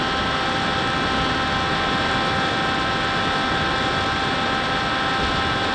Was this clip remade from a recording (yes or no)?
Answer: no